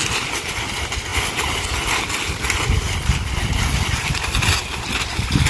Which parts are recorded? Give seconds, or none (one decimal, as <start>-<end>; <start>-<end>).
0.0-5.5